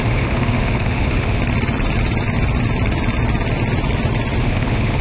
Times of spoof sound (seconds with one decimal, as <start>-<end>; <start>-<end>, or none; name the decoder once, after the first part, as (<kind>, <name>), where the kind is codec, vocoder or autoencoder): 0.0-1.4 (autoencoder, DAC-VAE); 4.4-5.0

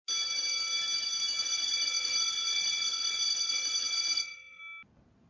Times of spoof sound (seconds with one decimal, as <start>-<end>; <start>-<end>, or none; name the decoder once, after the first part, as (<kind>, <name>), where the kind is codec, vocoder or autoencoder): 1.4-4.6 (vocoder, WaveNeXt)

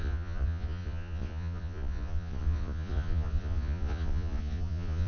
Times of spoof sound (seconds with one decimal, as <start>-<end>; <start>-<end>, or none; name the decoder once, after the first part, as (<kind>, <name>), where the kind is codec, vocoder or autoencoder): 0.0-5.1 (vocoder, Vocos)